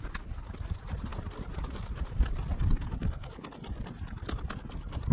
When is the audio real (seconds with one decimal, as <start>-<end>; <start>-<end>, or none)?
0.0-5.1